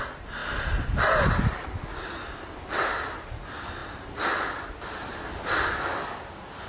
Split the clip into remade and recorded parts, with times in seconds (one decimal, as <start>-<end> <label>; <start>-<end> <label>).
0.0-6.7 recorded

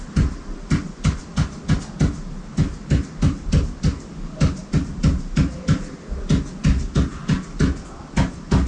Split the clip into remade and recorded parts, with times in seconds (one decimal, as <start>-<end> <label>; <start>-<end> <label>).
0.0-8.7 recorded

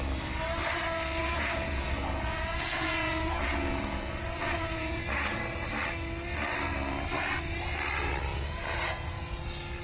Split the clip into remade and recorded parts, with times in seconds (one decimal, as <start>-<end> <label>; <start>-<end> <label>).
0.0-1.2 recorded; 1.2-5.4 remade; 5.4-8.3 recorded; 8.3-9.4 remade; 9.4-9.8 recorded